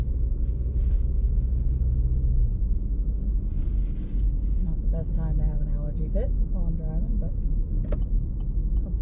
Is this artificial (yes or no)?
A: no